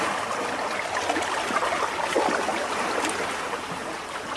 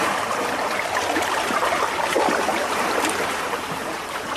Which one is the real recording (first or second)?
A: first